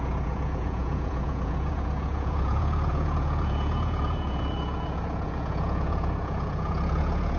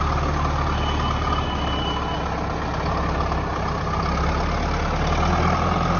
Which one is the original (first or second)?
second